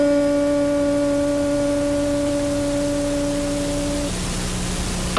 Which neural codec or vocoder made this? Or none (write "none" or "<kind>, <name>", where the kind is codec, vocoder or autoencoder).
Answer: none